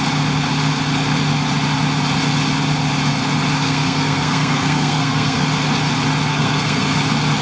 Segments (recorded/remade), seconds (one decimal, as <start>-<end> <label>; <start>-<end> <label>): 0.0-3.6 recorded; 3.6-5.5 remade; 5.5-6.3 recorded; 6.3-7.0 remade; 7.0-7.4 recorded